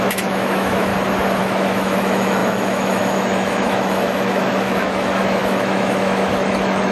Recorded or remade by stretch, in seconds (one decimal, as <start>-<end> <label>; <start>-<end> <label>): 0.0-0.9 remade; 0.9-1.4 recorded; 1.4-6.9 remade